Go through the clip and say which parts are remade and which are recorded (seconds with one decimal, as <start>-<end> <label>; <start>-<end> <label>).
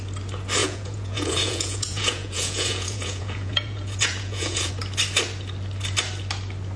0.0-0.6 recorded; 0.6-4.7 remade; 4.7-6.8 recorded